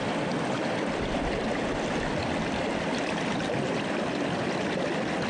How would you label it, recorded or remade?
recorded